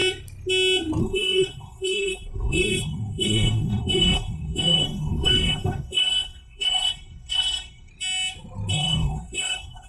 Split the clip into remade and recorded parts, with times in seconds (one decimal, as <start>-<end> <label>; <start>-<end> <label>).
0.0-1.0 recorded; 1.0-7.9 remade; 7.9-8.7 recorded; 8.7-9.9 remade